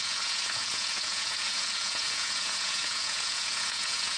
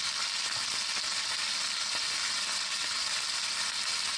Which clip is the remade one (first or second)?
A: first